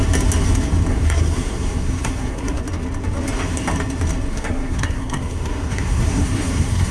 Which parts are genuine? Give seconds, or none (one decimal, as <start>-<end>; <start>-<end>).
0.0-0.9; 2.6-4.3

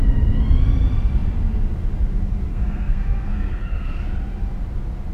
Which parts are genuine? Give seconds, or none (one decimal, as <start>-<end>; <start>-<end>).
0.0-2.5; 4.0-5.1

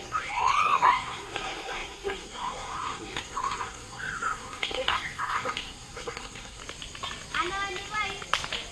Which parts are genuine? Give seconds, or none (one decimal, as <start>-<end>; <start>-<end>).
6.6-8.7

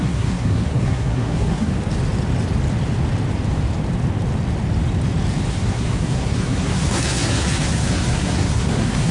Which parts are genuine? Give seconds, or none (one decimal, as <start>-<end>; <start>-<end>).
1.7-5.5

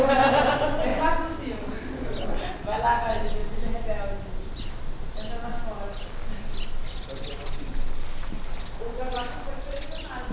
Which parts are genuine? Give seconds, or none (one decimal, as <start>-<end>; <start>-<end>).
0.0-10.3

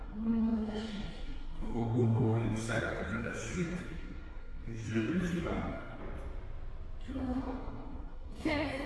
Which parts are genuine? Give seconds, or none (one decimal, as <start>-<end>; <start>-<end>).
6.0-7.1

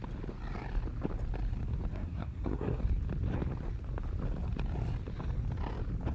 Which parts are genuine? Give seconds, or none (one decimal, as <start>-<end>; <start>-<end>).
0.0-1.9; 2.8-6.1